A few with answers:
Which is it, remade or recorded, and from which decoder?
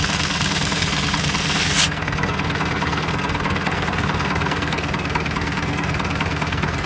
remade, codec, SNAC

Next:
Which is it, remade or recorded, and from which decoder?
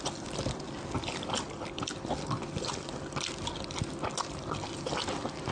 recorded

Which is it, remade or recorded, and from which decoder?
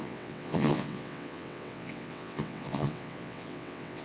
remade, vocoder, WaveNeXt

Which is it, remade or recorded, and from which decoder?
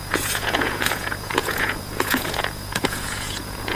remade, vocoder, Vocos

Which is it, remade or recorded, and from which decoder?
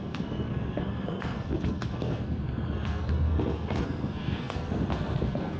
remade, codec, SNAC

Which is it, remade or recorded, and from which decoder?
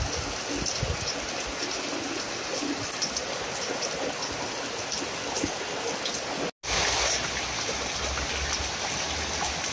recorded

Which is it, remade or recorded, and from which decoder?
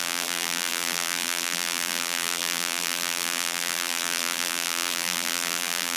remade, vocoder, BigVGAN v2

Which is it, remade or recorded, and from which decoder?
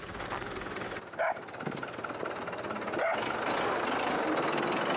recorded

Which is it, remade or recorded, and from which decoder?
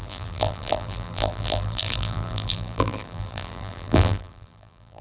remade, vocoder, BigVGAN v2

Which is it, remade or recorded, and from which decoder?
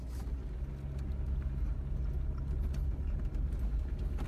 recorded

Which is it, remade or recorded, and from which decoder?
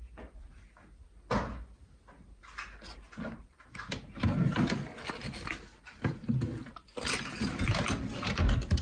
recorded